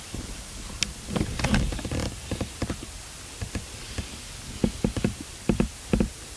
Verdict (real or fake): real